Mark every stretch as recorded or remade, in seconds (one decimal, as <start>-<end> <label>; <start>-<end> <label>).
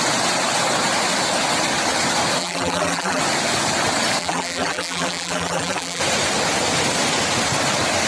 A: 0.0-2.4 recorded; 2.4-3.2 remade; 3.2-4.2 recorded; 4.2-6.0 remade; 6.0-8.1 recorded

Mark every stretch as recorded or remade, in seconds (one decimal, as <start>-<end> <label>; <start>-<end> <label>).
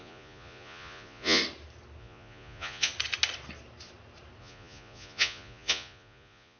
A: 0.0-1.4 remade; 1.4-2.0 recorded; 2.0-2.9 remade; 2.9-4.4 recorded; 4.4-6.6 remade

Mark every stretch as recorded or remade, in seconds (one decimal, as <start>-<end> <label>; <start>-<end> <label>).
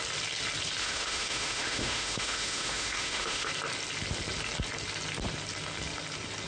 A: 0.0-0.8 recorded; 0.8-3.5 remade; 3.5-6.5 recorded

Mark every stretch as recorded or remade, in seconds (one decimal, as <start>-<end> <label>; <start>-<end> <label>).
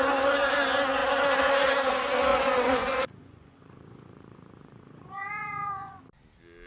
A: 0.0-2.3 recorded; 2.3-6.0 remade; 6.0-6.7 recorded